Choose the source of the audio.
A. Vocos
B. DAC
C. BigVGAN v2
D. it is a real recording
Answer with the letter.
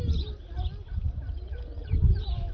D